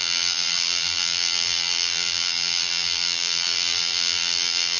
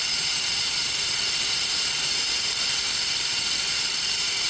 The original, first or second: second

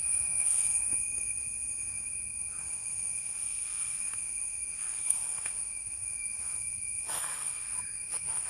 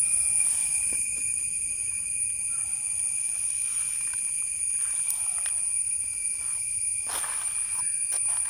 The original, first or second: second